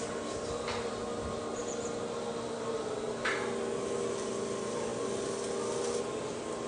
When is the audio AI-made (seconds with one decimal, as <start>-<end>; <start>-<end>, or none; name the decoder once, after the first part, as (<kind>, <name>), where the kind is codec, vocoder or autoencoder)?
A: none